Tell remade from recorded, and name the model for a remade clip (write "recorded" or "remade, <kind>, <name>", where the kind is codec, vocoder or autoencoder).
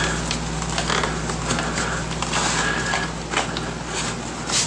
recorded